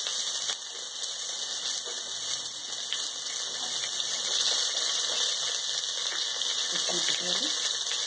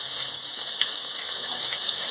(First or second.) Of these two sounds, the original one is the first